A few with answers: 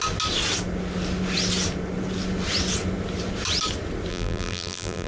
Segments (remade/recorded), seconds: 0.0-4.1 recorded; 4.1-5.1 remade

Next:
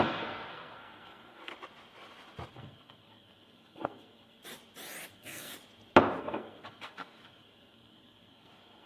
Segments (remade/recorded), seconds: 0.0-1.5 remade; 1.5-2.5 recorded; 2.5-4.4 remade; 4.4-5.1 recorded; 5.1-5.5 remade; 5.5-6.2 recorded; 6.2-8.9 remade

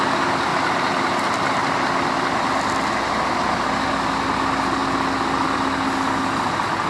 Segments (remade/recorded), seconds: 0.0-0.5 recorded; 0.5-3.4 remade; 3.4-6.9 recorded

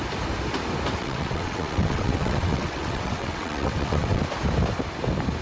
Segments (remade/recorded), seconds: 0.0-1.0 recorded; 1.0-4.2 remade; 4.2-5.4 recorded

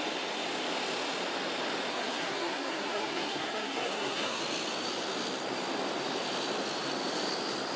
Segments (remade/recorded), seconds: 0.0-1.9 recorded; 1.9-4.4 remade; 4.4-7.8 recorded